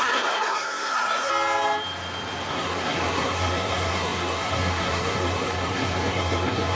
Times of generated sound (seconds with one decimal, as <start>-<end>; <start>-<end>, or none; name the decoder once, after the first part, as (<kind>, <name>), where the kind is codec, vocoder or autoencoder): 0.0-1.3 (codec, SNAC); 2.5-6.8